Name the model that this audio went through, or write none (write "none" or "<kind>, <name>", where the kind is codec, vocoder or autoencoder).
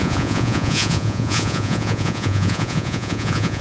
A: vocoder, Vocos